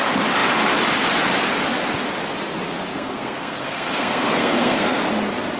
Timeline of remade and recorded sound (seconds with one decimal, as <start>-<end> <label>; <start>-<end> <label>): 0.0-2.9 recorded; 2.9-5.0 remade; 5.0-5.6 recorded

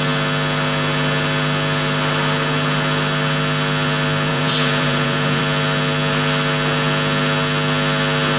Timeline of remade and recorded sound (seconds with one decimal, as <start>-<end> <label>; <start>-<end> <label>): 0.0-4.3 recorded; 4.3-5.4 remade; 5.4-8.4 recorded

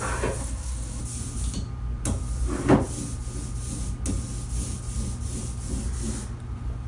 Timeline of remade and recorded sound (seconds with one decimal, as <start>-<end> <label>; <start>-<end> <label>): 0.0-0.4 recorded; 0.4-1.0 remade; 1.0-6.9 recorded

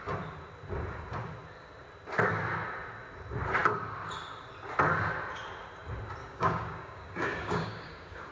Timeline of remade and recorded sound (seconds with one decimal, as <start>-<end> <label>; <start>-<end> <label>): 0.0-6.2 recorded; 6.2-8.3 remade

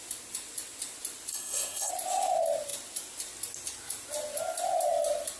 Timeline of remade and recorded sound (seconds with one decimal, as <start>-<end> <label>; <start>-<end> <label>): 0.0-1.3 recorded; 1.3-1.9 remade; 1.9-5.4 recorded

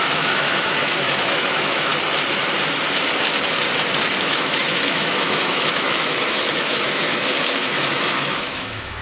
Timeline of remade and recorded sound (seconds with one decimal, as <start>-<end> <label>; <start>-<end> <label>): 0.0-1.9 remade; 1.9-4.3 recorded; 4.3-9.0 remade